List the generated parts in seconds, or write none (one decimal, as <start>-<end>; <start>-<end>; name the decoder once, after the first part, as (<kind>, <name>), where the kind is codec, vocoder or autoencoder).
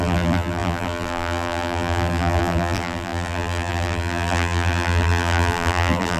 0.0-6.2 (vocoder, BigVGAN v2)